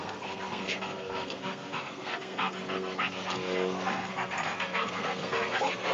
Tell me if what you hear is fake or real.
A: fake